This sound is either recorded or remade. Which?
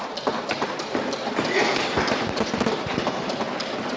remade